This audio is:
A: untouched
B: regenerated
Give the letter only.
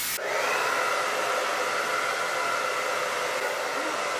A